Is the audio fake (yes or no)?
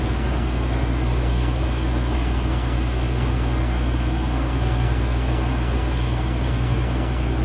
yes